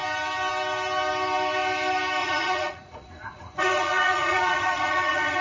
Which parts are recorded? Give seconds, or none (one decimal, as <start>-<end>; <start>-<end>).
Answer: 0.0-2.2